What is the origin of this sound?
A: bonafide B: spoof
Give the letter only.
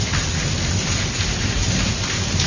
A